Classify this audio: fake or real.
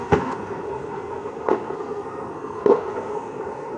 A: fake